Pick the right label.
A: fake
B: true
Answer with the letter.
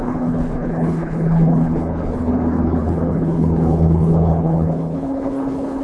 A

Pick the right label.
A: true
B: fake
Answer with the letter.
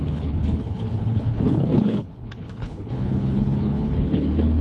B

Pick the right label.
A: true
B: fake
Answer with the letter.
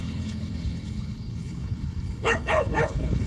B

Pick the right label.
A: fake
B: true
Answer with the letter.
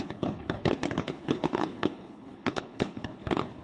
A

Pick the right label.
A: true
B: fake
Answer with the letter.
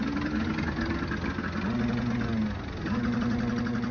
A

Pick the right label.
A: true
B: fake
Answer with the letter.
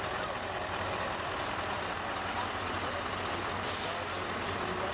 A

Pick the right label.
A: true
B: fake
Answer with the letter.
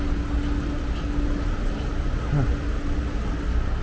A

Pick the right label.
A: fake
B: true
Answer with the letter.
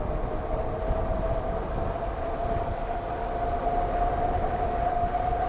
B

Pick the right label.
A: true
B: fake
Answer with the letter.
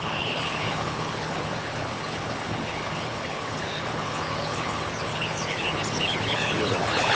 B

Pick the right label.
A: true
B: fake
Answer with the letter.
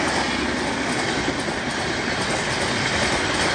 A